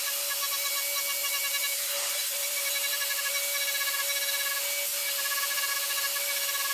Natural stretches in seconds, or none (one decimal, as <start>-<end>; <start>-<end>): 0.0-1.2; 3.3-5.0; 5.7-6.7